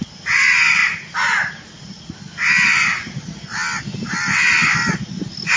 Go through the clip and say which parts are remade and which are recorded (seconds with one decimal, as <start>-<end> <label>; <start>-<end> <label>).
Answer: 0.0-0.8 recorded; 0.8-1.5 remade; 1.5-5.6 recorded